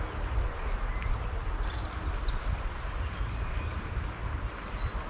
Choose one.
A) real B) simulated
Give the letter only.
A